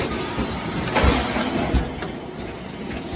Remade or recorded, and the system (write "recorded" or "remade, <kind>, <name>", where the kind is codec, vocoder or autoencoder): recorded